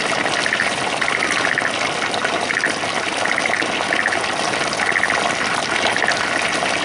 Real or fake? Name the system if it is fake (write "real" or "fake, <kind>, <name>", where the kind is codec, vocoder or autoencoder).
real